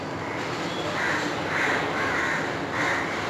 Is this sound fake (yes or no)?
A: no